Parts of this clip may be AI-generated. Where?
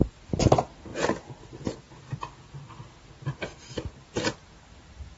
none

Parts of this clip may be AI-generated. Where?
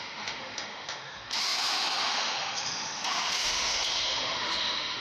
0.0-5.0 (autoencoder, DAC-VAE)